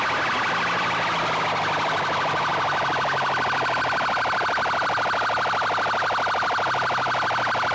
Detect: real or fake real